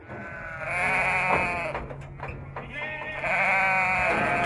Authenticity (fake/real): real